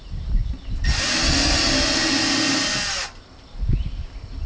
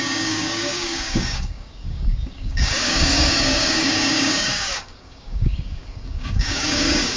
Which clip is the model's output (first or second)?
second